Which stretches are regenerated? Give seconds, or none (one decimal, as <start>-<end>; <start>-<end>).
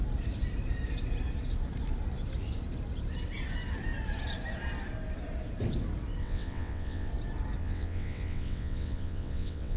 6.2-7.1; 7.6-9.8